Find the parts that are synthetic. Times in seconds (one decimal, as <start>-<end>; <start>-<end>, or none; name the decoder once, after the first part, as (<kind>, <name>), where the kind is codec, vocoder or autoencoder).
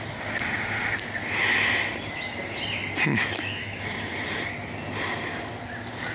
3.1-3.8 (autoencoder, DAC-VAE)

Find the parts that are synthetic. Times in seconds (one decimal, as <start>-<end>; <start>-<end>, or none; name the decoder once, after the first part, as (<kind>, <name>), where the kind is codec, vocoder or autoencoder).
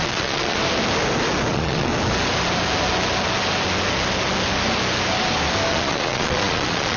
0.0-0.6 (vocoder, Vocos); 1.5-1.9; 5.7-7.0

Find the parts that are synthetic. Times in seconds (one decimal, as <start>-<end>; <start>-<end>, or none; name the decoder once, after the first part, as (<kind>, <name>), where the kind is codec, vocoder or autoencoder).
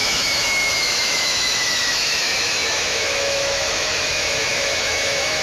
0.0-5.4 (autoencoder, DAC-VAE)